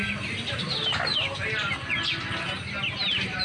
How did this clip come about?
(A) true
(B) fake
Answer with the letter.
A